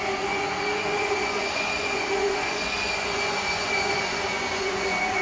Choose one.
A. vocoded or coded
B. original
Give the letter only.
A